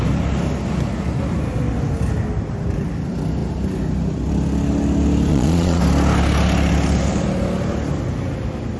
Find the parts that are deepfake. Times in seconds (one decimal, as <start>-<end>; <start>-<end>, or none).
5.3-5.8